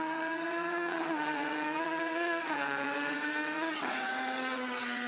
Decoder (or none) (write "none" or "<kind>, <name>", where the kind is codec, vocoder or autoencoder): vocoder, WaveNeXt